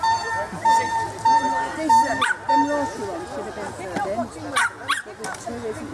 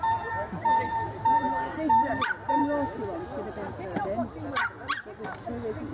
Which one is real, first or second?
first